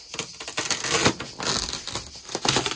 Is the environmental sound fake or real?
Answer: real